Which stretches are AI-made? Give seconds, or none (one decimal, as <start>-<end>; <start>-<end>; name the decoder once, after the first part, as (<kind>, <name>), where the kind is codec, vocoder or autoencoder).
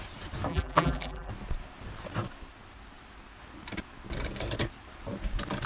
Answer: 0.5-1.3 (vocoder, BigVGAN v2)